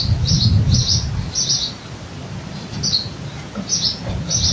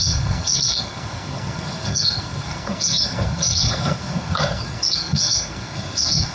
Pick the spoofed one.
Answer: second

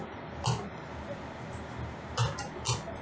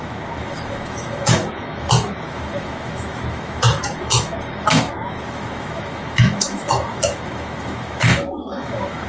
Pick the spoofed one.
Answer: second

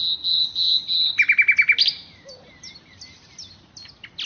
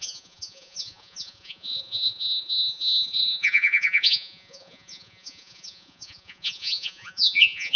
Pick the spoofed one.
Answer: second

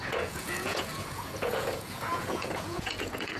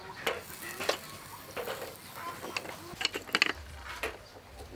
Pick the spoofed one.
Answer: first